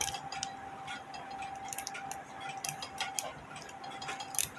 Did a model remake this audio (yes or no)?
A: no